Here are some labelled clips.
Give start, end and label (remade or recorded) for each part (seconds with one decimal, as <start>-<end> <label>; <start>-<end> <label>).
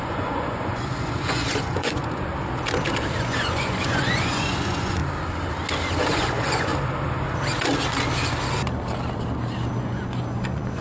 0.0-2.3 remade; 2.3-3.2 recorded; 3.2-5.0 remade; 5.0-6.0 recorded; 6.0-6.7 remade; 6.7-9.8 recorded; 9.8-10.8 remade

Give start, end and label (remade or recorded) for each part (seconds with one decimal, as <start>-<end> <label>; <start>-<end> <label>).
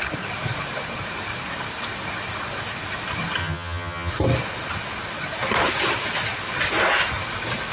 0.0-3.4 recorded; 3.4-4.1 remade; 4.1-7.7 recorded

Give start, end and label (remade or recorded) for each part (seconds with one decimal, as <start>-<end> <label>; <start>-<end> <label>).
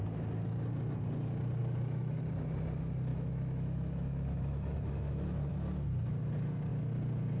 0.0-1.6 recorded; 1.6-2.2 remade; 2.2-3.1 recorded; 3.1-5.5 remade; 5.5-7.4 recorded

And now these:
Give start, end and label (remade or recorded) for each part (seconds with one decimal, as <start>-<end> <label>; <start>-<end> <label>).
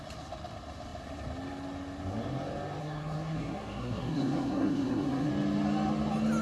0.0-2.8 recorded; 2.8-5.3 remade; 5.3-6.4 recorded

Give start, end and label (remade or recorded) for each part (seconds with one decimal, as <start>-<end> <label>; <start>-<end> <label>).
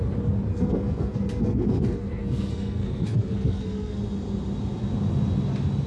0.0-0.5 recorded; 0.5-4.0 remade; 4.0-5.9 recorded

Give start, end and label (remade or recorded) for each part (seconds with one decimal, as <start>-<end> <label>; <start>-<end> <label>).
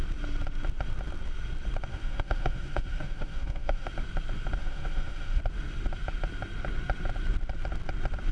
0.0-1.9 recorded; 1.9-3.9 remade; 3.9-4.6 recorded; 4.6-5.4 remade; 5.4-8.3 recorded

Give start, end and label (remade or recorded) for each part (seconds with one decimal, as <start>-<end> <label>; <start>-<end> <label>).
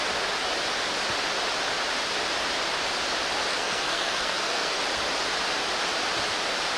0.0-3.5 recorded; 3.5-4.8 remade; 4.8-6.8 recorded